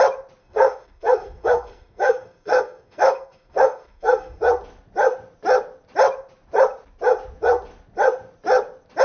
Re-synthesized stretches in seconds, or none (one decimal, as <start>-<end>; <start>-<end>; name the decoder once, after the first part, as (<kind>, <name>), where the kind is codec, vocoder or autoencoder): 0.4-4.4 (codec, SNAC)